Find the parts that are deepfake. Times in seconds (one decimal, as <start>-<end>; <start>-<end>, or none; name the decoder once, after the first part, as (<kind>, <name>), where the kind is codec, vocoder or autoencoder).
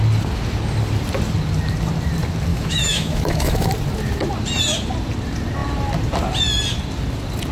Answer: 2.5-3.7 (autoencoder, DAC-VAE)